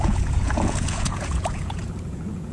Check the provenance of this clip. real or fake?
fake